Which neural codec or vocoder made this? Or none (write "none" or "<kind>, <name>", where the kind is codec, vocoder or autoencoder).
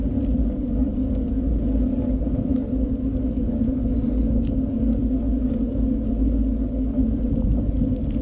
none